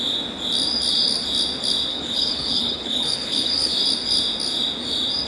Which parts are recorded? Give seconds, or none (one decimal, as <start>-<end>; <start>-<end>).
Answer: 0.0-1.9; 3.7-5.3